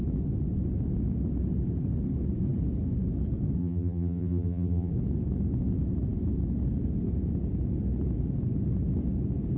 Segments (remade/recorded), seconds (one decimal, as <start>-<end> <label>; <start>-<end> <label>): 0.0-3.6 recorded; 3.6-4.9 remade; 4.9-9.6 recorded